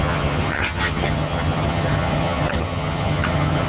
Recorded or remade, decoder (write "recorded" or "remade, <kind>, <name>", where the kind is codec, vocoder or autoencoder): remade, vocoder, HiFi-GAN